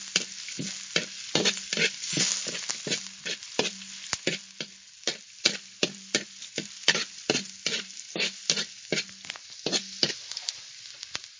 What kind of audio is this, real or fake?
real